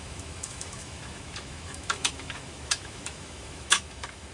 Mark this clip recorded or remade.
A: remade